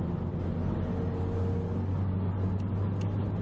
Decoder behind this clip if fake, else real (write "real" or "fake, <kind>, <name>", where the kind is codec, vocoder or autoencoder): real